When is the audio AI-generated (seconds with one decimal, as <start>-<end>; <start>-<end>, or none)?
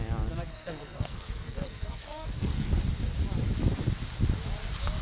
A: 0.5-2.7